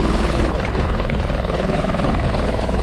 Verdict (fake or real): fake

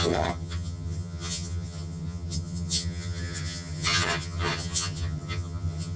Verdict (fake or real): fake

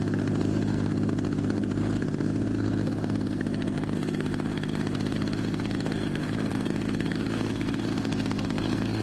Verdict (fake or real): fake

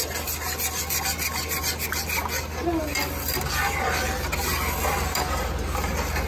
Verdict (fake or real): real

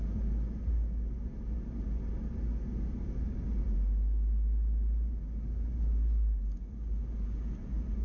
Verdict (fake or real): real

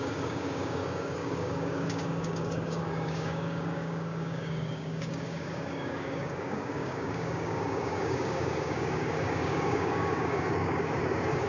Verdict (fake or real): fake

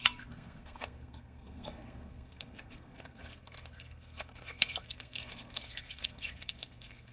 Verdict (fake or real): fake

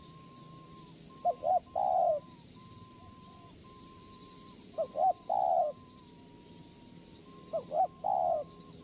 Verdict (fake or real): real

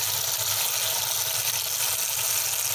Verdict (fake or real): real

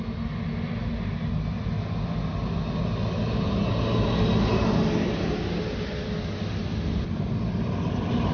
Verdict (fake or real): real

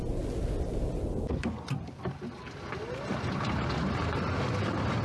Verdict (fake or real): real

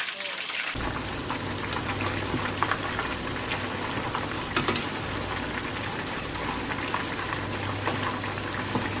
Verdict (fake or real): real